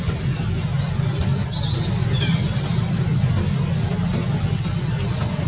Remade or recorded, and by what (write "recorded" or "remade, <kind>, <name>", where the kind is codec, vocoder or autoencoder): recorded